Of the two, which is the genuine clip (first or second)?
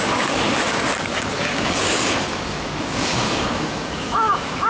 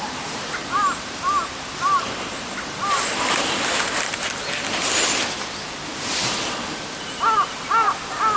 second